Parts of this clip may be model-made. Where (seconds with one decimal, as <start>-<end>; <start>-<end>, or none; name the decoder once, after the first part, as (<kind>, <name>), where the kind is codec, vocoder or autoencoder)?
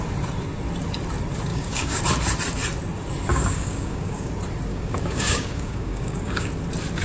1.5-2.0 (codec, DAC); 3.3-4.3; 4.7-6.5